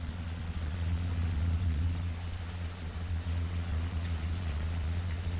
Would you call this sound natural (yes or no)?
no